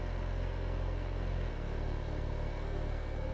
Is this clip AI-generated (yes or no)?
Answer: yes